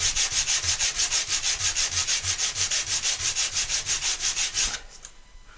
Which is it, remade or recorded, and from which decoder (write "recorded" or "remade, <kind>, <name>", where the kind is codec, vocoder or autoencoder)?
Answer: remade, vocoder, BigVGAN v2